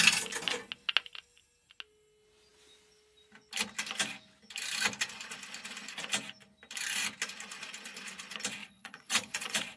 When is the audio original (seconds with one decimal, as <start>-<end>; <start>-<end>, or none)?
0.0-8.6